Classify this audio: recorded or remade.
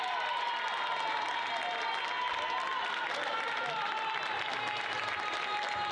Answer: recorded